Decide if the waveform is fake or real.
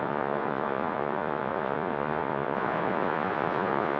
fake